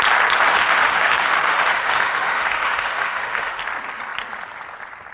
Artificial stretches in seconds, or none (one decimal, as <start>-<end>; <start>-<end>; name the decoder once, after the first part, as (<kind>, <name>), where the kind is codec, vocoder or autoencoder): 0.5-3.6 (autoencoder, DAC-VAE)